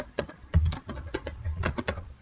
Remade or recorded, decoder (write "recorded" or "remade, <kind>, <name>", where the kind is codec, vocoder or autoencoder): remade, vocoder, Vocos